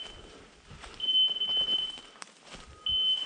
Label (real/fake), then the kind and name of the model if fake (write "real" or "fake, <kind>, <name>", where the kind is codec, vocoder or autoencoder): real